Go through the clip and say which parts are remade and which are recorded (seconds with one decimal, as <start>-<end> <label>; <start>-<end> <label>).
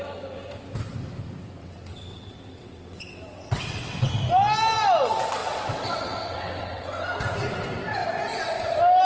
0.0-1.6 recorded; 1.6-4.1 remade; 4.1-5.4 recorded; 5.4-6.9 remade; 6.9-9.0 recorded